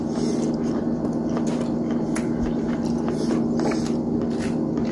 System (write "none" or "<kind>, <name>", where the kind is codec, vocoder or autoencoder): none